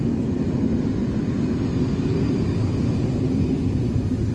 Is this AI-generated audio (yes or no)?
yes